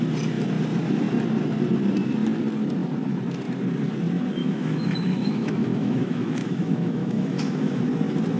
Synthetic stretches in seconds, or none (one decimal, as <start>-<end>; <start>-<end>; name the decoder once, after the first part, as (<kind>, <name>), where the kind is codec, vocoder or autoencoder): 4.4-7.8 (autoencoder, DAC-VAE)